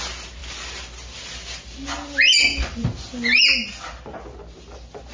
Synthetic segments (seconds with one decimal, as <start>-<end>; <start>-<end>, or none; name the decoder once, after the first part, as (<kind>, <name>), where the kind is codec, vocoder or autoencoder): none